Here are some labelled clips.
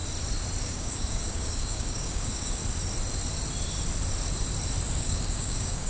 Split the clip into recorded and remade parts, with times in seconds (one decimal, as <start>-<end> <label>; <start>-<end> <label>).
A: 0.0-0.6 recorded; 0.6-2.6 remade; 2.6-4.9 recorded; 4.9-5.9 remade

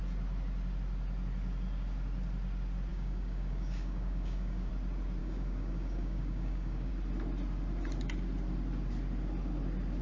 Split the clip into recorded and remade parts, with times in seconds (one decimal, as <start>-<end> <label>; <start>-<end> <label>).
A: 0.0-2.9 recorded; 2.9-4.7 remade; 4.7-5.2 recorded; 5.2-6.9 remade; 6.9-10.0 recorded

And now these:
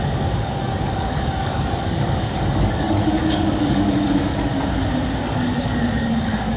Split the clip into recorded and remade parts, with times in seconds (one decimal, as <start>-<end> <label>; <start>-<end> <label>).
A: 0.0-4.5 remade; 4.5-5.2 recorded; 5.2-6.6 remade